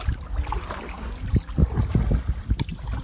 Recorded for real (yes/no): yes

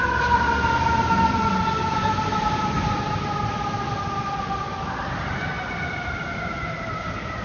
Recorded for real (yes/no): yes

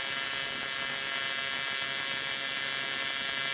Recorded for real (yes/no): yes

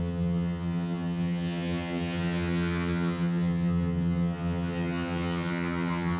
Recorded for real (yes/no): no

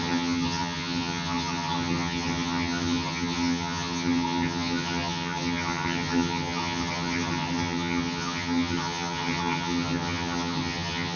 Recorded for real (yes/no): no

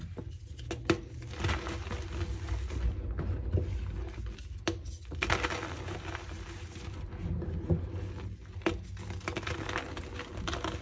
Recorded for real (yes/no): yes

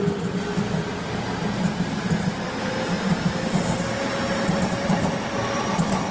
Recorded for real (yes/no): yes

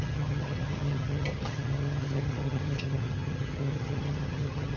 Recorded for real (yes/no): no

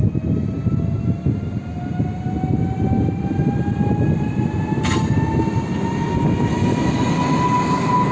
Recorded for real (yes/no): yes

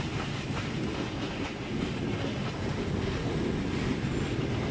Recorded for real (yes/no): yes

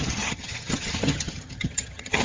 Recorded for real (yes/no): no